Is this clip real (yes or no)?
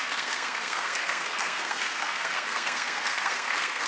no